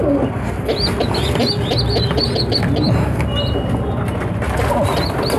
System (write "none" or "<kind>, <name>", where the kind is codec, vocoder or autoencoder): none